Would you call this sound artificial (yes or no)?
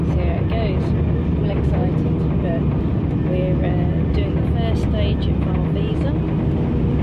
no